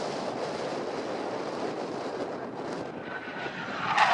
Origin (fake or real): real